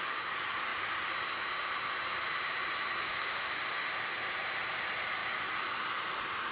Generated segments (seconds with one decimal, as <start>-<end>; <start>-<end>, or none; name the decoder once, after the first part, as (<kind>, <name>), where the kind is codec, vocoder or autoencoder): 3.0-3.9 (autoencoder, DAC-VAE)